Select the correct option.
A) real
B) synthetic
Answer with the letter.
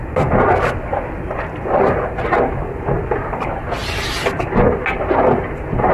A